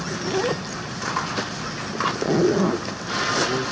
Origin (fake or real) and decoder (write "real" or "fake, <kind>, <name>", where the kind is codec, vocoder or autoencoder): real